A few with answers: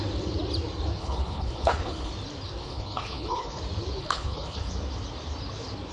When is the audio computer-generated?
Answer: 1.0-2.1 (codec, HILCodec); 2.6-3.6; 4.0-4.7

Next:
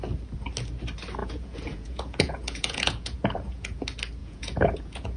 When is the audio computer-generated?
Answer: 1.2-3.8 (vocoder, Vocos); 4.2-5.2